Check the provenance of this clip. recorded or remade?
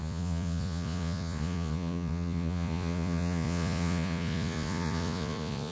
remade